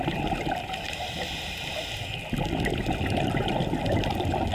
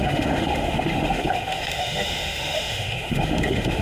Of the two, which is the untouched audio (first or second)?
first